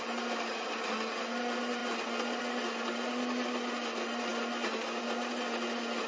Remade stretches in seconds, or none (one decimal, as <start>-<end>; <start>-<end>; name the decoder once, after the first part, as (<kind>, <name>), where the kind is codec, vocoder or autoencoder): none